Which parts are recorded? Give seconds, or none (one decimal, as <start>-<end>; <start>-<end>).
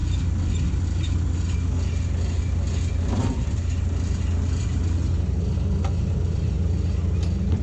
0.0-7.6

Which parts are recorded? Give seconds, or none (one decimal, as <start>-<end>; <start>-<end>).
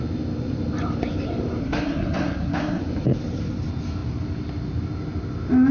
0.0-1.6; 2.8-5.7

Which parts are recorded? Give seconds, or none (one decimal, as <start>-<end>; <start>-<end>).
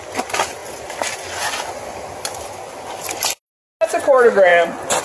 0.0-5.0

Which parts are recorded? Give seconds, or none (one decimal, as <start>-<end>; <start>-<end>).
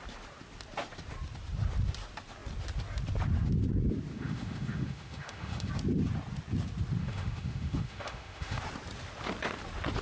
0.0-4.1; 5.7-7.0; 8.6-10.0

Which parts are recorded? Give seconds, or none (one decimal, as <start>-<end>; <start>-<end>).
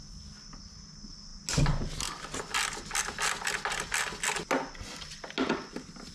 0.0-6.1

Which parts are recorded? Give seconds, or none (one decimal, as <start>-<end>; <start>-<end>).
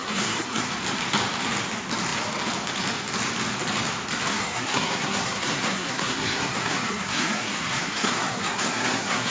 0.7-4.3